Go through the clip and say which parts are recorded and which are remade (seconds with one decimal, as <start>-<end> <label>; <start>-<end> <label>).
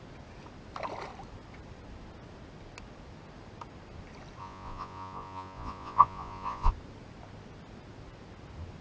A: 0.0-4.4 recorded; 4.4-6.7 remade; 6.7-8.8 recorded